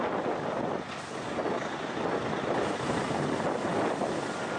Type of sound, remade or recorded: recorded